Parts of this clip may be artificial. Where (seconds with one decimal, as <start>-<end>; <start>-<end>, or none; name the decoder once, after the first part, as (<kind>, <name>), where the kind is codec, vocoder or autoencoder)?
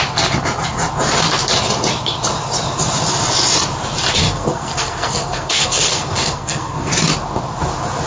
4.2-6.9 (codec, SNAC)